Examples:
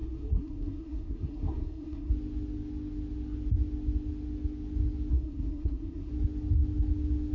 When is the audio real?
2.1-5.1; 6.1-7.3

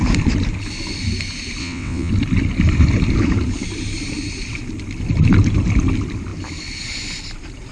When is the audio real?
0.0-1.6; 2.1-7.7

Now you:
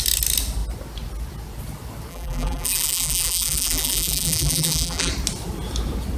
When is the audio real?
0.0-2.1; 5.1-6.2